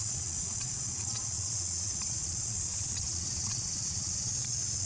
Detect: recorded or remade remade